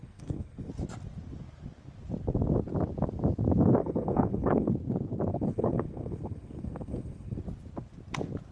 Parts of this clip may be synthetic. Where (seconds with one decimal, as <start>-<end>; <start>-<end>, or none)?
0.0-0.7; 3.8-4.7; 5.3-7.4